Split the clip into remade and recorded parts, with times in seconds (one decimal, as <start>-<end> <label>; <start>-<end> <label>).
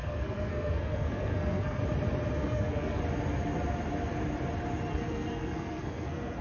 0.0-1.8 remade; 1.8-2.4 recorded; 2.4-3.0 remade; 3.0-4.9 recorded; 4.9-6.4 remade